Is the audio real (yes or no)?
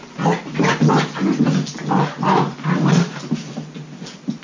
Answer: yes